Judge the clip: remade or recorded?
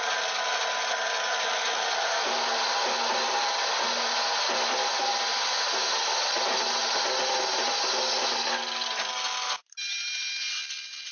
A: recorded